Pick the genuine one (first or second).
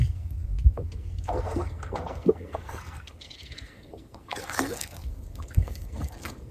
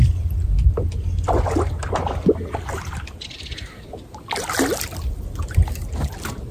second